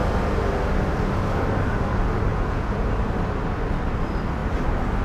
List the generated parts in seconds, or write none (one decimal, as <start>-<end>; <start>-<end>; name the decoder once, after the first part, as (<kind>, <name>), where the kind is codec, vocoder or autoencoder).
2.3-2.9 (vocoder, Vocos)